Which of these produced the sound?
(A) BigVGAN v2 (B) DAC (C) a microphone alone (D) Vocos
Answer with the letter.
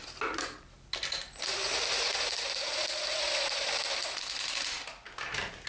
C